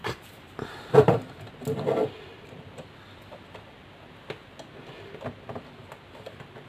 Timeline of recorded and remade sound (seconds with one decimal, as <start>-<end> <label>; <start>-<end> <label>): 0.0-1.5 remade; 1.5-6.7 recorded